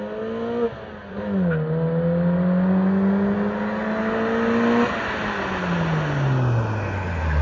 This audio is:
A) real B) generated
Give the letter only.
A